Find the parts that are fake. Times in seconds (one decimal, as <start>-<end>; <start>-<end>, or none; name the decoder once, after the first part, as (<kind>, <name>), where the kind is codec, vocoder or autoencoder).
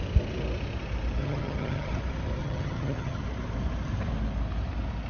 1.2-2.0 (vocoder, HiFi-GAN); 2.4-3.2